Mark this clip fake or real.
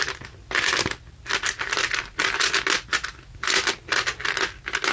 real